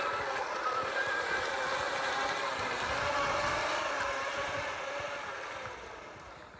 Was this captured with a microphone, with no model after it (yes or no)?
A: yes